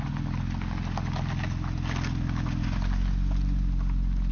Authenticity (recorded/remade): recorded